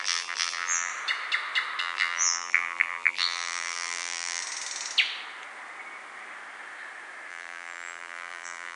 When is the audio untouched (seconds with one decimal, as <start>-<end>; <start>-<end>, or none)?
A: 0.9-1.8; 4.4-7.3